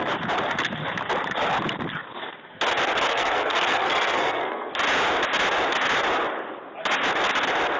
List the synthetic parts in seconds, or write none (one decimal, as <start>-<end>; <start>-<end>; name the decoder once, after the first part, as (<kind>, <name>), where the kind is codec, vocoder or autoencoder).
3.1-4.7 (codec, SNAC)